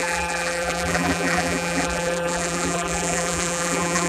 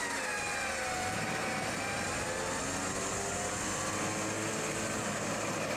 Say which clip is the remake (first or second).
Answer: first